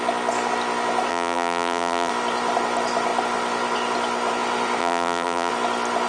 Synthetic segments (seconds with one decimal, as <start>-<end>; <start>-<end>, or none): 1.1-2.1; 4.8-5.5